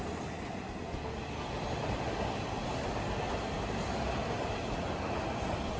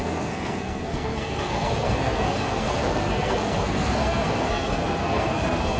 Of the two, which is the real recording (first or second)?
first